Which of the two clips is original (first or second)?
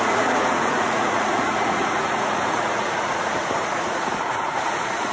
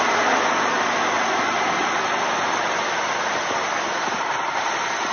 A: second